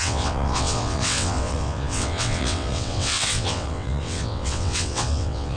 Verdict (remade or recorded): remade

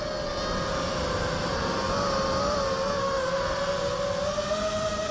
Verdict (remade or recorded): recorded